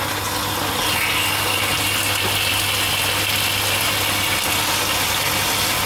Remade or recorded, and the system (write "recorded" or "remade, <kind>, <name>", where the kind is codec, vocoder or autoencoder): recorded